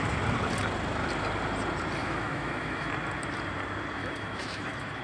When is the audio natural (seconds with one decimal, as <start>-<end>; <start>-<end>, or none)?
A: 0.0-2.0; 2.9-4.0